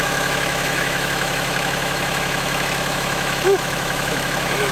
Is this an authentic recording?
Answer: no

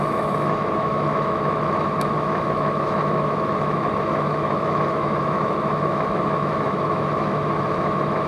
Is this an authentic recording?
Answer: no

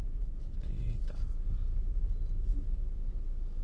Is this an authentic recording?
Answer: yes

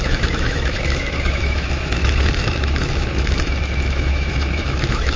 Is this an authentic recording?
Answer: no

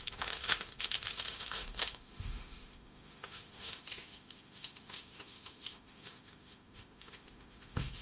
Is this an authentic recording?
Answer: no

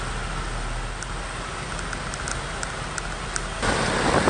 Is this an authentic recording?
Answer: yes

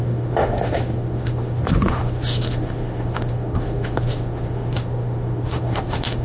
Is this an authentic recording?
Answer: no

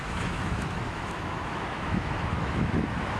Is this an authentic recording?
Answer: no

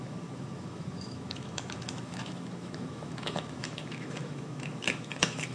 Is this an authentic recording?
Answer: no